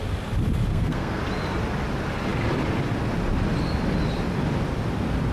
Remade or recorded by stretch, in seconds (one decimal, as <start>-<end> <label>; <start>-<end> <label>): 0.0-0.7 recorded; 0.7-1.2 remade; 1.2-5.3 recorded